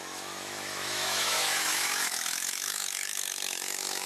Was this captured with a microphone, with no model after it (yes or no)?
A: no